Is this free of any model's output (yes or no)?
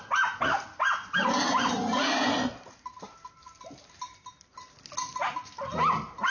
yes